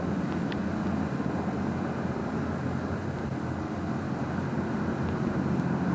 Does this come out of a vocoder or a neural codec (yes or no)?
no